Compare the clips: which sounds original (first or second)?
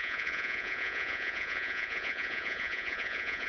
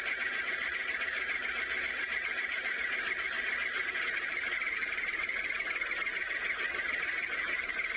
second